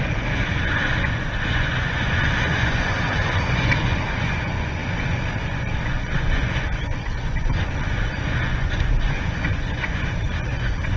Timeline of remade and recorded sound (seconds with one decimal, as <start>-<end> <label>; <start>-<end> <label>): 0.0-11.0 remade